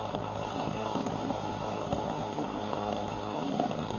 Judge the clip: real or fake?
fake